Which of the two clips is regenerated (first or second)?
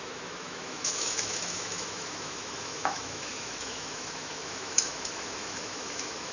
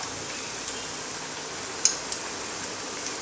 first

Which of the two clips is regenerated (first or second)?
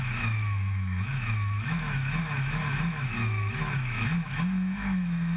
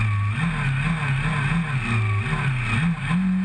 first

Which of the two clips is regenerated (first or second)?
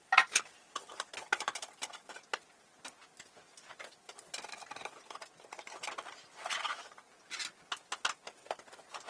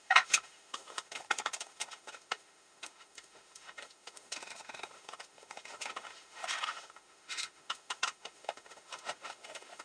second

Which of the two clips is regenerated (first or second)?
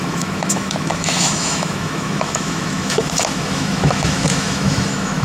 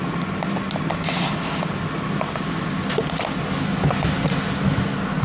first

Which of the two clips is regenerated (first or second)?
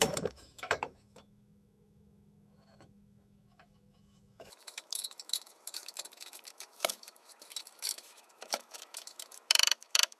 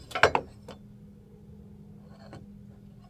first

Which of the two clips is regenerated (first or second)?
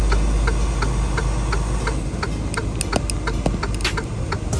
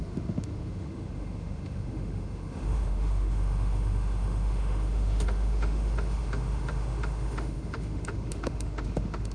second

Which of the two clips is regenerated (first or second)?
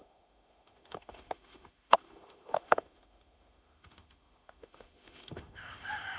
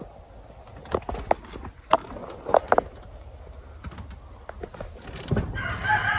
first